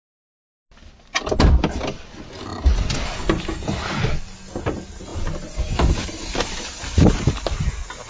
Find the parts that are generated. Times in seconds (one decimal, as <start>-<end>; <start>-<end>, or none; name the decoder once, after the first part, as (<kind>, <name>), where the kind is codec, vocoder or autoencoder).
none